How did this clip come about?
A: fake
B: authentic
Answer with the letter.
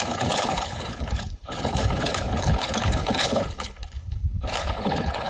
A